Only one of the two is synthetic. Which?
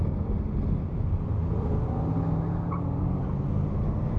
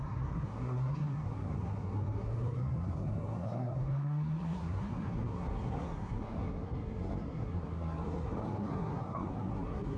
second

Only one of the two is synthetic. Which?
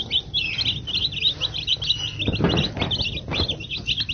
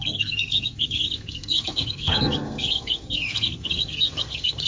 second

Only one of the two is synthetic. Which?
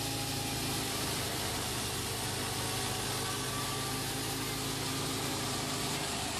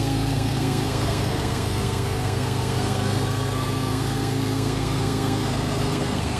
second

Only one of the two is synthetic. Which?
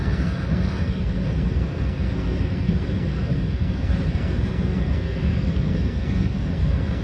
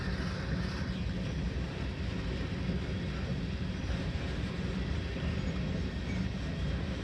first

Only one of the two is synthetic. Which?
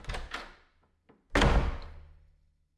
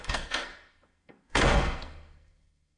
second